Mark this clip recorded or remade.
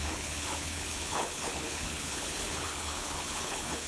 remade